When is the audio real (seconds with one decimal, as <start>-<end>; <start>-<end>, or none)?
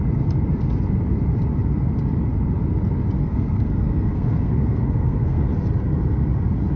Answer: 0.0-3.2; 5.4-6.8